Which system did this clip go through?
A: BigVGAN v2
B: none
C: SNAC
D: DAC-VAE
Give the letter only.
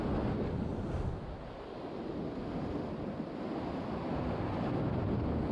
B